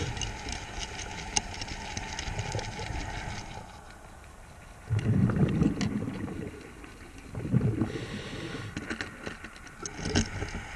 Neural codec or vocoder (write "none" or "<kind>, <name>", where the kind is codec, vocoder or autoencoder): none